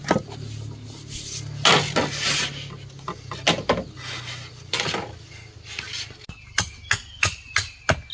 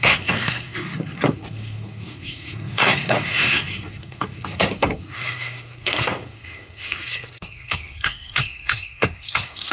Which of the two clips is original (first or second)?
first